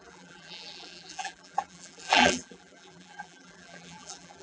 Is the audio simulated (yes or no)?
yes